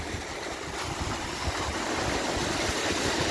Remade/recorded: recorded